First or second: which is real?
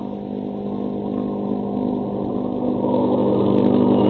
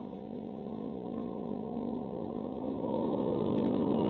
first